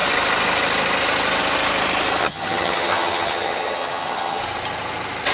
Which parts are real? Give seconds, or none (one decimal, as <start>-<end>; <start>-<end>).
0.0-2.2; 4.4-5.3